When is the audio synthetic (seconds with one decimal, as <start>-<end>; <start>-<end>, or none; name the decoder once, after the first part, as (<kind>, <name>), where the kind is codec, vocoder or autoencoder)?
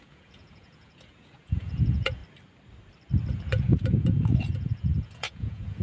0.0-2.2 (vocoder, Vocos); 3.3-5.8